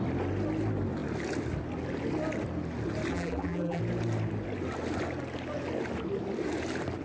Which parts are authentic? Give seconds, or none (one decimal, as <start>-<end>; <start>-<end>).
0.0-3.1; 3.8-7.0